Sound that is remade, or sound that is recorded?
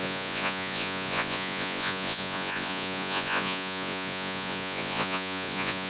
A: remade